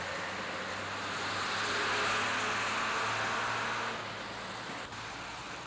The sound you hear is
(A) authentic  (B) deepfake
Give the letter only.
A